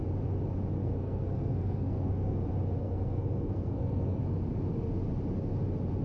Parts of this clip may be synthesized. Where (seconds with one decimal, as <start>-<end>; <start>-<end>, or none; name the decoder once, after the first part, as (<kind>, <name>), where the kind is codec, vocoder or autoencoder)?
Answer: 0.8-2.4 (codec, SNAC); 2.8-4.2